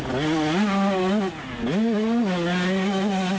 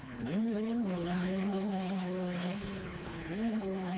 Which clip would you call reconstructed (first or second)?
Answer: second